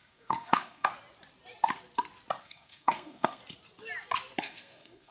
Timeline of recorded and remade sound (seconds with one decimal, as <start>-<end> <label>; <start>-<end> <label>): 0.0-0.9 remade; 0.9-2.4 recorded; 2.4-3.4 remade; 3.4-4.4 recorded; 4.4-5.1 remade